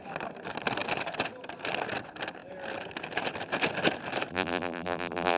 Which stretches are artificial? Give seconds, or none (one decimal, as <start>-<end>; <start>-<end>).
4.3-5.4